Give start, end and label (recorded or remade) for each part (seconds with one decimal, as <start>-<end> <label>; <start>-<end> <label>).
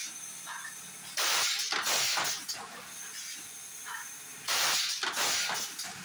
0.0-4.3 recorded; 4.3-4.8 remade; 4.8-6.0 recorded